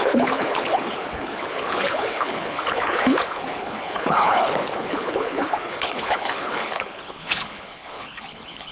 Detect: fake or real fake